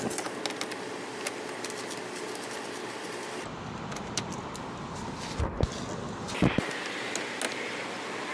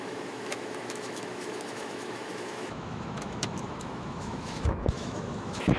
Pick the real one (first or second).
first